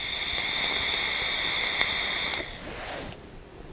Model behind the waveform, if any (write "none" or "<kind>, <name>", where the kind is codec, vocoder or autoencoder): none